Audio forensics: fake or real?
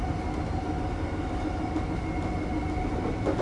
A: real